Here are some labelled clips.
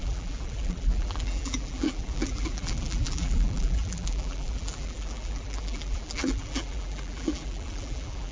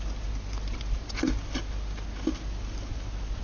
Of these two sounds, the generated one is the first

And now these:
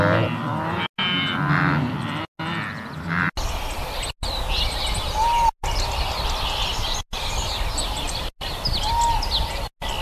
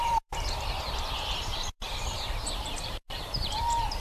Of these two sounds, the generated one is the second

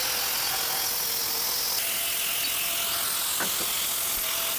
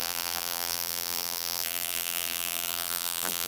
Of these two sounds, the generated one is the second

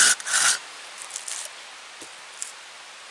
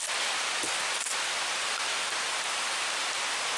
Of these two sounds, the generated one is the second